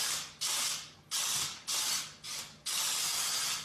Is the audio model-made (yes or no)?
no